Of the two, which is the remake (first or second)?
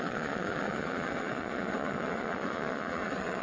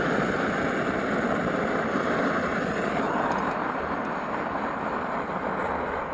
first